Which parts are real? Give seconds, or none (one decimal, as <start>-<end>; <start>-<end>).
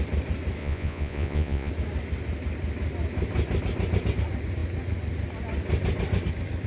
0.0-0.6; 1.7-6.7